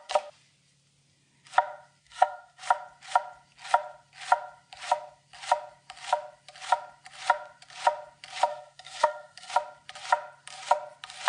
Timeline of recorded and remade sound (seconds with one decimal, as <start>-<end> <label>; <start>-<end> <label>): 0.0-2.0 recorded; 2.0-2.6 remade; 2.6-8.5 recorded; 8.5-9.5 remade; 9.5-11.3 recorded